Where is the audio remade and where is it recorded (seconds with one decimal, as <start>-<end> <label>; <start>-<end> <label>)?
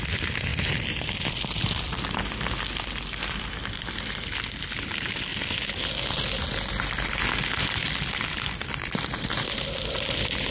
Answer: 0.0-0.5 recorded; 0.5-4.7 remade; 4.7-7.8 recorded; 7.8-9.3 remade; 9.3-10.5 recorded